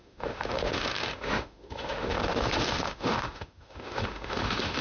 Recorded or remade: remade